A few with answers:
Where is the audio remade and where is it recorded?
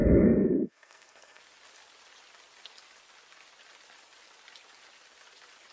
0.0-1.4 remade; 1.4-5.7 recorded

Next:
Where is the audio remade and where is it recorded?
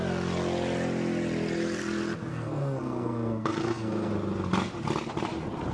0.0-2.3 recorded; 2.3-4.1 remade; 4.1-5.7 recorded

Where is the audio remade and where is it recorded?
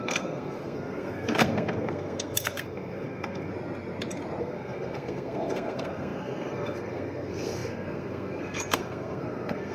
0.0-3.5 remade; 3.5-4.4 recorded; 4.4-9.7 remade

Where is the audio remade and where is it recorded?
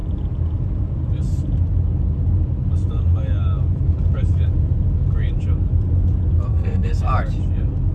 0.0-6.5 recorded; 6.5-7.1 remade; 7.1-7.9 recorded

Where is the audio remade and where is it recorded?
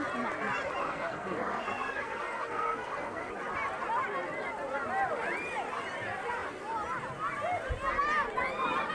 0.0-0.8 recorded; 0.8-3.3 remade; 3.3-8.9 recorded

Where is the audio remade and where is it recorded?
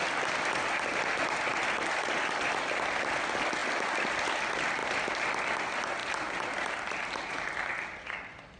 0.0-8.6 recorded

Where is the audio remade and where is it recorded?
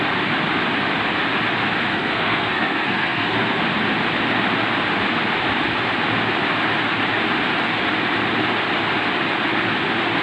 0.0-1.9 recorded; 1.9-3.6 remade; 3.6-10.2 recorded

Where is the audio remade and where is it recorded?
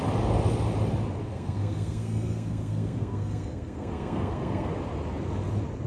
0.0-1.2 recorded; 1.2-4.7 remade; 4.7-5.9 recorded